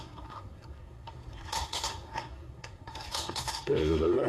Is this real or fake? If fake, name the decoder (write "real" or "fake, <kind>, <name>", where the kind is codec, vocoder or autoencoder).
fake, codec, SNAC